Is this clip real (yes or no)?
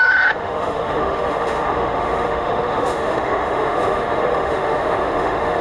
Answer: no